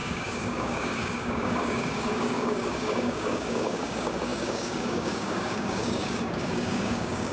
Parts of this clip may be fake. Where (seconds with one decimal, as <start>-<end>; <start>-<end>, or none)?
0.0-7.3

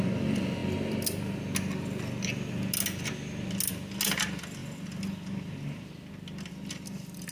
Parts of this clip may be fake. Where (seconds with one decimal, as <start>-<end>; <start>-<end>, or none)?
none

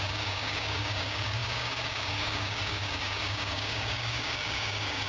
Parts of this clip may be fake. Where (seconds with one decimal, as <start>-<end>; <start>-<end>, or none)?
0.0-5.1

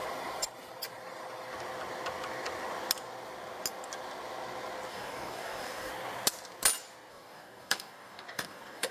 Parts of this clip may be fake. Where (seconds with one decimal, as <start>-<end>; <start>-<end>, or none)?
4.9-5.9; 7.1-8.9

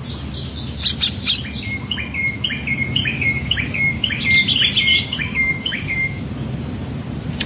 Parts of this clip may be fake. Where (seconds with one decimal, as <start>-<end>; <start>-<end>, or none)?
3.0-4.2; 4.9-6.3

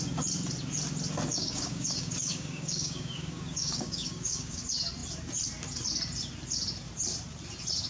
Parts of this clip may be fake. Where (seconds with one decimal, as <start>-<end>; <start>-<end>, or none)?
1.3-4.6

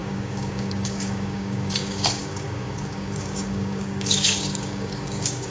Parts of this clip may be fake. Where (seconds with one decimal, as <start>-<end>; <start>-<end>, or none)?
0.0-5.5